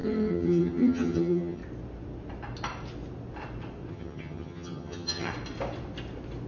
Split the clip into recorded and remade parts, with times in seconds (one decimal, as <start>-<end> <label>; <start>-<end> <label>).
0.0-1.6 remade; 1.6-3.9 recorded; 3.9-5.3 remade; 5.3-6.5 recorded